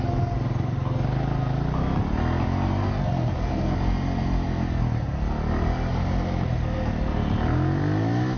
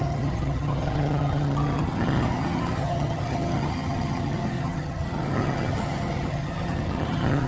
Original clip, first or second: first